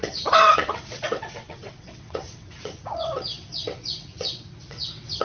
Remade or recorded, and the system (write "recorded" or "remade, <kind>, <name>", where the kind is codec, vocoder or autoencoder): remade, vocoder, WaveNeXt